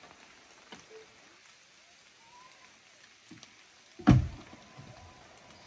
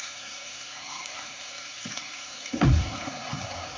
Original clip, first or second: first